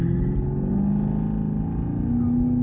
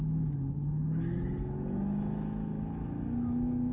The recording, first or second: first